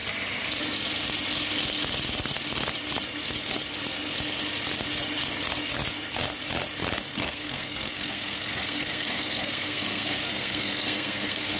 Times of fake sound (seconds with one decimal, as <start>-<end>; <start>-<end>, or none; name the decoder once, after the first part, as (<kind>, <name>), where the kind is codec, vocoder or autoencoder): 7.1-11.6 (codec, SNAC)